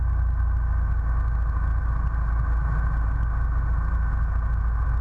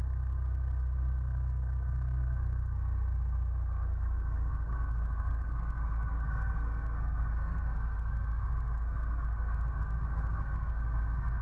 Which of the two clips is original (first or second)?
first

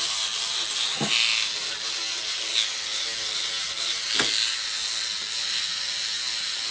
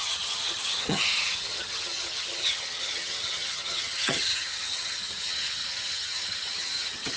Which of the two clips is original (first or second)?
first